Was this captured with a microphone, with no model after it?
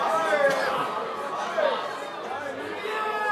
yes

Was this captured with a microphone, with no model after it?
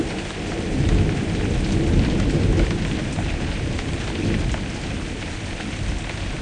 yes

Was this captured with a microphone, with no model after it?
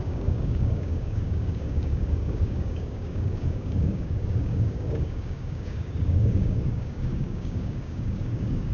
no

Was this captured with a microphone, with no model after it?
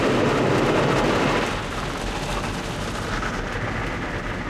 yes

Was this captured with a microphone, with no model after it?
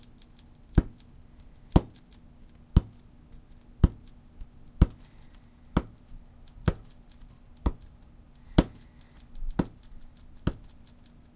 yes